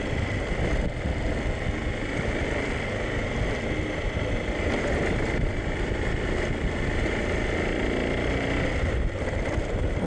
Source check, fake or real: real